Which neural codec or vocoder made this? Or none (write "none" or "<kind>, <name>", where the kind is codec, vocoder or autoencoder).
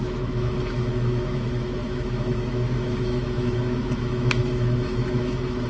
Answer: autoencoder, DAC-VAE